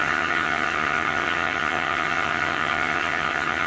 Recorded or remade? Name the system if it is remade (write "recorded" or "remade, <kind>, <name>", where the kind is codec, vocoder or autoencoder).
remade, vocoder, HiFi-GAN